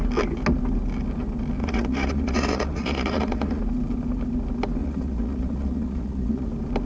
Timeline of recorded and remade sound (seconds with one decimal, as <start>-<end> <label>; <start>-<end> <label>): 0.0-1.6 recorded; 1.6-3.6 remade; 3.6-4.8 recorded; 4.8-6.5 remade; 6.5-6.9 recorded